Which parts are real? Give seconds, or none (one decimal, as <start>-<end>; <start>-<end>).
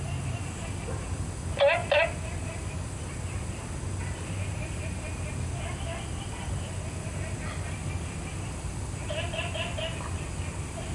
0.0-10.9